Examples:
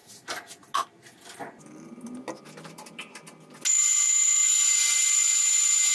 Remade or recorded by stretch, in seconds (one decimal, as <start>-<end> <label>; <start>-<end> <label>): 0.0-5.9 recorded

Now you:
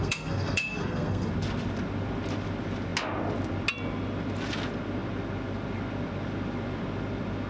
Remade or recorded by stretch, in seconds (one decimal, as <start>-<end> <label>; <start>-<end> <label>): 0.0-1.3 remade; 1.3-7.5 recorded

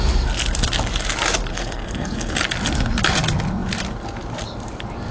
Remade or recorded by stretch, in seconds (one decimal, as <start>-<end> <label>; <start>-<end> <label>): 0.0-1.5 recorded; 1.5-2.4 remade; 2.4-5.1 recorded

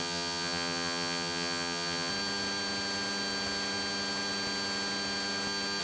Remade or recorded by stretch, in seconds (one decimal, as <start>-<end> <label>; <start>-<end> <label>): 0.0-2.1 remade; 2.1-5.8 recorded

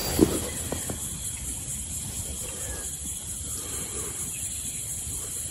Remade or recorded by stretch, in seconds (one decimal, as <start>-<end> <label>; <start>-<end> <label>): 0.0-5.5 recorded